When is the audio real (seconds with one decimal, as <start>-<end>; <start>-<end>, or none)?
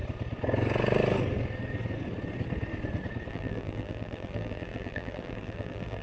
0.0-3.3